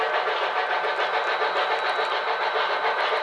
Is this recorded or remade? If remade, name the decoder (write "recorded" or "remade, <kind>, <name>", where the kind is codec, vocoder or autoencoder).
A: recorded